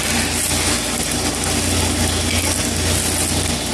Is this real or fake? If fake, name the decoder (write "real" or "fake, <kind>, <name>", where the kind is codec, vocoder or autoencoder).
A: real